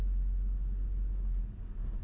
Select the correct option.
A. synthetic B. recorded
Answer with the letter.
B